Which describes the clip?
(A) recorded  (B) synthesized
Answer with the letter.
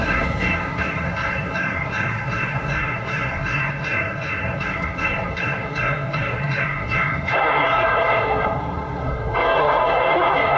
B